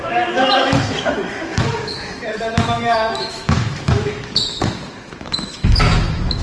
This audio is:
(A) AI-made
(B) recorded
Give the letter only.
A